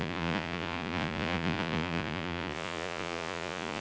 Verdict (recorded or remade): remade